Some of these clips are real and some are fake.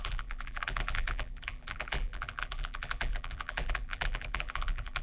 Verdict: fake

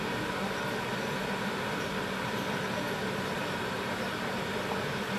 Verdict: real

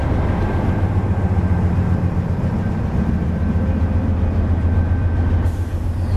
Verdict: real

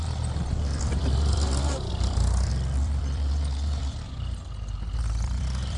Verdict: fake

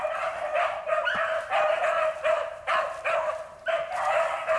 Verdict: real